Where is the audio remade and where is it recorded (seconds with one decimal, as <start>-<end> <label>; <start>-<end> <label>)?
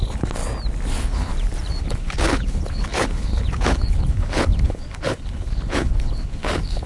0.0-0.4 remade; 0.4-0.9 recorded; 0.9-1.3 remade; 1.3-1.8 recorded; 1.8-6.9 remade